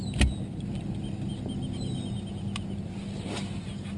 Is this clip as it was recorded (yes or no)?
yes